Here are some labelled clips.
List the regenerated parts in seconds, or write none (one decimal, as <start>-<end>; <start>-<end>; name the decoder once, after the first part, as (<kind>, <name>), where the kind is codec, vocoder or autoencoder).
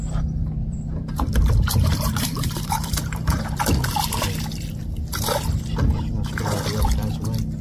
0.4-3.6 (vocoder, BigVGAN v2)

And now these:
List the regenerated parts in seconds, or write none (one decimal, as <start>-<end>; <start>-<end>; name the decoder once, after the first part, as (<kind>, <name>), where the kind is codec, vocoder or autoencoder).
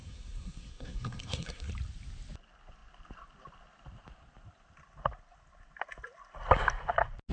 0.0-1.7 (codec, SNAC)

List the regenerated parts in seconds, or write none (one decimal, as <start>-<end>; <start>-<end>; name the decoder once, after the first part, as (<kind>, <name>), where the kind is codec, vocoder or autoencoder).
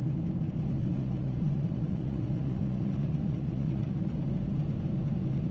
0.8-4.1 (vocoder, Vocos)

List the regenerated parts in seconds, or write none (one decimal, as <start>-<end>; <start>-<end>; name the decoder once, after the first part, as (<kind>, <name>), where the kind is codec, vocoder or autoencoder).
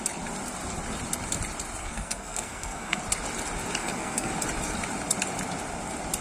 1.8-3.0 (codec, SNAC); 3.8-4.3